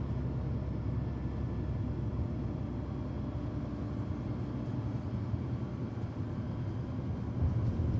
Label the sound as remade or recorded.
recorded